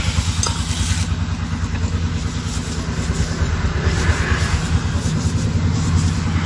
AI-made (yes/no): no